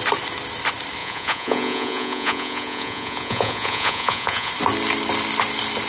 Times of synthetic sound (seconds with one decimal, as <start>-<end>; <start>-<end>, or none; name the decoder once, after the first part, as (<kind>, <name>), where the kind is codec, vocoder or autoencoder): 1.0-4.5 (vocoder, Vocos)

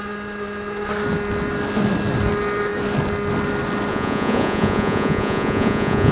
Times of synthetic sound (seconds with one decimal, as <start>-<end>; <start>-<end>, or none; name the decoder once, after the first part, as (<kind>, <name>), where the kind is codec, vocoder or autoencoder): 3.9-6.1 (vocoder, Vocos)

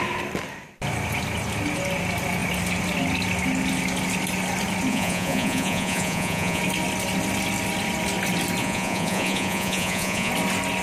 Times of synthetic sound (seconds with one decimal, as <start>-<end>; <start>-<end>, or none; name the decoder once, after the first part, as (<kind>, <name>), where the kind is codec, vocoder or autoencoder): 4.9-6.6 (vocoder, Vocos); 8.6-10.3

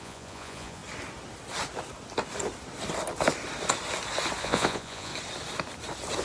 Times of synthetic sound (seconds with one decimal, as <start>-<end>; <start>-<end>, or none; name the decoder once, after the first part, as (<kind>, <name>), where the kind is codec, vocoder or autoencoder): 0.0-0.8 (vocoder, Vocos); 4.4-5.1

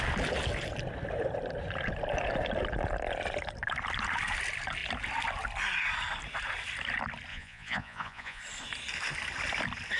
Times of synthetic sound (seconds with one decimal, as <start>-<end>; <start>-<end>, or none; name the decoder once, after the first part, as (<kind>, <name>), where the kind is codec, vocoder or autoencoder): 7.3-8.4 (vocoder, Vocos)

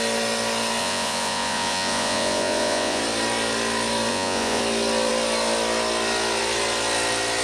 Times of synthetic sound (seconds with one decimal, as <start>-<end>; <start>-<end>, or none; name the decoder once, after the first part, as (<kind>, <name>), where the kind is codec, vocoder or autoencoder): 0.8-3.0 (vocoder, Vocos); 4.1-4.6